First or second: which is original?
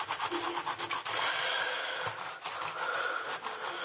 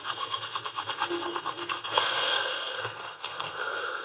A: first